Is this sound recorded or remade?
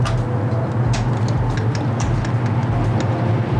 recorded